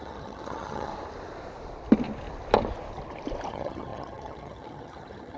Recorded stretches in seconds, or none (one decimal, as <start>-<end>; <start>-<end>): 0.9-3.5